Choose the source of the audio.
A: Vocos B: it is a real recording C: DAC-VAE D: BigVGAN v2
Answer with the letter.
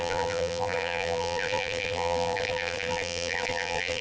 D